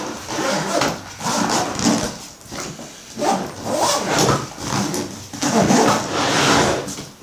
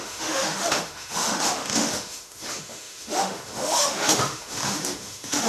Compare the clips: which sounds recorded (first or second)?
first